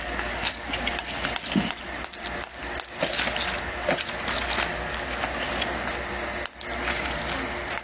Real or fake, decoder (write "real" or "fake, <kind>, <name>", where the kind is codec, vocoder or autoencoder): real